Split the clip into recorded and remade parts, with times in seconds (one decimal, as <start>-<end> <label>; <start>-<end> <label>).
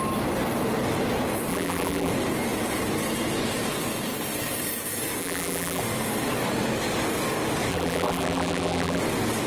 0.0-1.5 recorded; 1.5-2.1 remade; 2.1-5.2 recorded; 5.2-5.8 remade; 5.8-7.7 recorded; 7.7-9.0 remade; 9.0-9.5 recorded